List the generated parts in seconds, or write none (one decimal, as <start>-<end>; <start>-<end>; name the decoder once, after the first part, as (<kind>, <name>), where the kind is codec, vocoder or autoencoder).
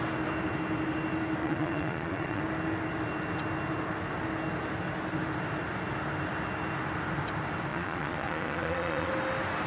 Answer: 1.4-2.4 (vocoder, Vocos); 7.7-9.1